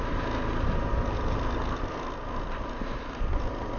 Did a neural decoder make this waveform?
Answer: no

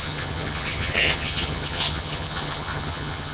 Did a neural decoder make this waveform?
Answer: yes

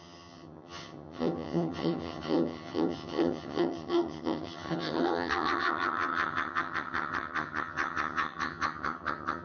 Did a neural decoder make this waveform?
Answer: yes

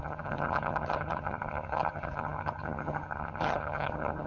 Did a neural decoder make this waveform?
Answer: yes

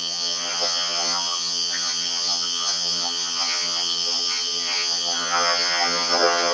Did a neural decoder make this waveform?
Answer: yes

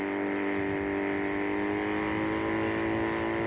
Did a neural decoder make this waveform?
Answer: no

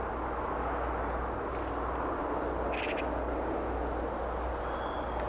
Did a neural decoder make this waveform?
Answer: no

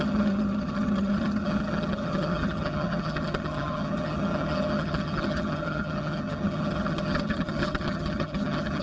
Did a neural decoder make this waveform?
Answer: yes